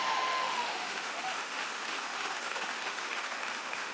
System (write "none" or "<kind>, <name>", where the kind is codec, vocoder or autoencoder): autoencoder, DAC-VAE